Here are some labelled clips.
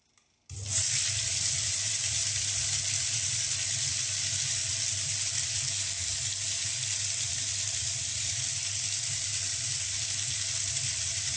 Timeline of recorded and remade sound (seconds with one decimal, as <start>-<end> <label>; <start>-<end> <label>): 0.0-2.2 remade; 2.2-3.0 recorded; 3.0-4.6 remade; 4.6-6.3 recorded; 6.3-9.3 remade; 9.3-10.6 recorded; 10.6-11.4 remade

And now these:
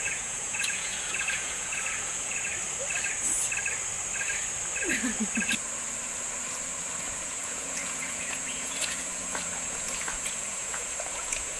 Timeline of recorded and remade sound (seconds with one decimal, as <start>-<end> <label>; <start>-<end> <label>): 0.0-2.5 remade; 2.5-7.0 recorded; 7.0-11.6 remade

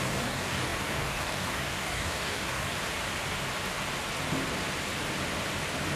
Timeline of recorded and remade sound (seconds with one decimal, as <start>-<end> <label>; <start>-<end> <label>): 0.0-2.7 remade; 2.7-6.0 recorded